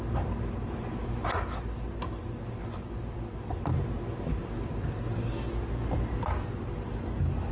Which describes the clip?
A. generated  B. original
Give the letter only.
B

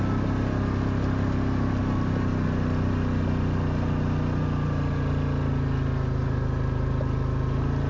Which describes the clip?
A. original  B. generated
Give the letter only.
A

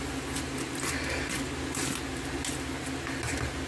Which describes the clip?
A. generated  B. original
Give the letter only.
B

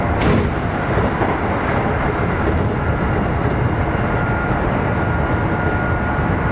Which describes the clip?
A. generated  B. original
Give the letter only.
B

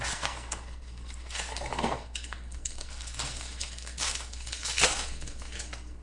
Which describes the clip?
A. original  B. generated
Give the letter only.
B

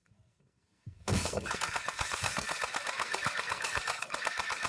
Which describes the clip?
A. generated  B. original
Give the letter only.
A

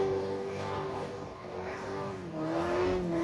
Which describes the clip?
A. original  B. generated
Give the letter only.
B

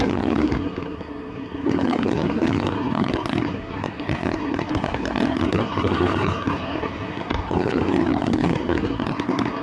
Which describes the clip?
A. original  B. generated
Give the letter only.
B